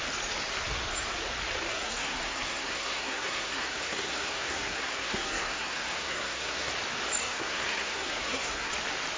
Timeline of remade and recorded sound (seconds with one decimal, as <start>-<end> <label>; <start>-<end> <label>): 0.0-1.7 recorded; 1.7-6.7 remade; 6.7-7.2 recorded; 7.2-8.7 remade; 8.7-9.2 recorded